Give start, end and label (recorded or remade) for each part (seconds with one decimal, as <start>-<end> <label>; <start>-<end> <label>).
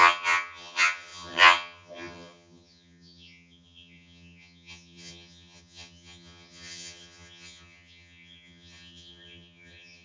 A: 0.0-10.0 remade